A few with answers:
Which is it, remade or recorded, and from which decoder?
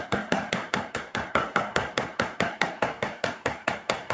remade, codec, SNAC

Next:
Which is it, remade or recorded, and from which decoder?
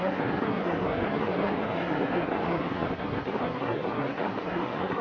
remade, codec, SNAC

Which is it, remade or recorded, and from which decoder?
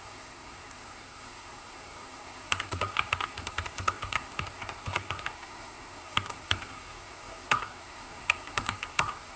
remade, codec, SNAC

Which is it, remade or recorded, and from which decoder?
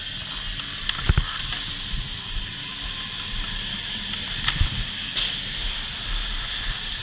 recorded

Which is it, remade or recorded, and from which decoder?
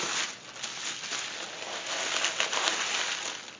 recorded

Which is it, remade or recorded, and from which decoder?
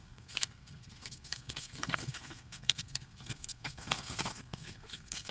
remade, codec, SNAC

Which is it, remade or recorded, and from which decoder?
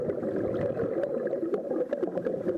recorded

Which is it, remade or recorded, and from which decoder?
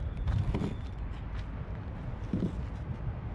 recorded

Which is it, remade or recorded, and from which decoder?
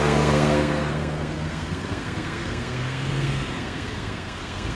remade, codec, SNAC